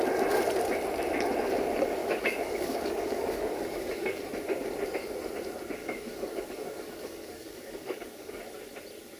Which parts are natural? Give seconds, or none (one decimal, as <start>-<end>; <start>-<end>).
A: 0.0-2.0; 4.2-5.8; 8.4-9.2